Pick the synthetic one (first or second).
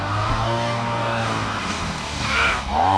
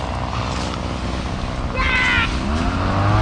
first